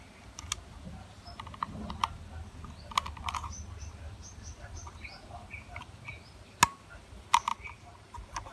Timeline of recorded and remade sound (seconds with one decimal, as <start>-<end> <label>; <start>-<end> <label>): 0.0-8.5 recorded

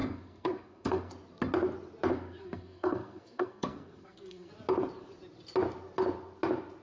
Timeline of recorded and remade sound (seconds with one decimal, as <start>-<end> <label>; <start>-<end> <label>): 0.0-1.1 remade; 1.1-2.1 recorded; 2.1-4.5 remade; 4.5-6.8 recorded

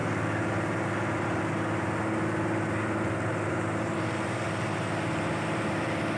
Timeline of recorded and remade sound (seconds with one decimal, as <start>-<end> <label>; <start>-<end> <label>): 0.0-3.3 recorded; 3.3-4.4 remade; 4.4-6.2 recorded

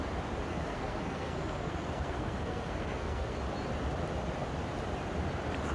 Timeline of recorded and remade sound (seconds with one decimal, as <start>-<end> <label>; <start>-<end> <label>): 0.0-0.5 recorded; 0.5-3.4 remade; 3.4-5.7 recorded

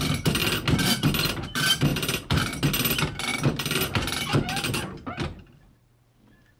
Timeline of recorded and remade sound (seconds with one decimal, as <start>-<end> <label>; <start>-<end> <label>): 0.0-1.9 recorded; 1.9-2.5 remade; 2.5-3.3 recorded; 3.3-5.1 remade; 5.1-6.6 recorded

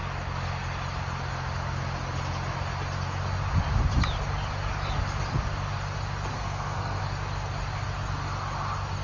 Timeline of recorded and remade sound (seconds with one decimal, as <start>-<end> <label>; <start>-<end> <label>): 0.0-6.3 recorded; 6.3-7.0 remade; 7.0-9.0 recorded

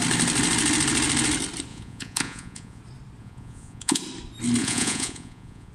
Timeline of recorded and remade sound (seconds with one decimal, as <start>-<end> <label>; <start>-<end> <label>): 0.0-1.7 recorded; 1.7-2.8 remade; 2.8-3.2 recorded; 3.2-4.0 remade; 4.0-4.6 recorded; 4.6-5.7 remade